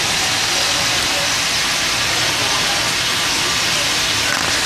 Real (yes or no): yes